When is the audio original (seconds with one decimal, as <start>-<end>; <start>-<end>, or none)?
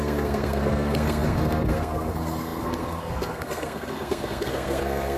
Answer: none